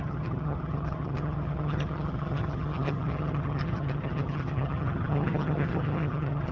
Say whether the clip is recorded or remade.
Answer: remade